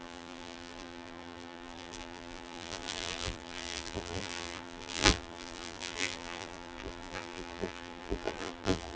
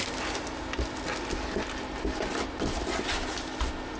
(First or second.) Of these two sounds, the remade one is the first